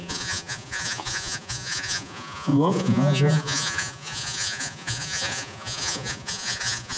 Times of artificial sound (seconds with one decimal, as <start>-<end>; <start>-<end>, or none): 0.0-7.0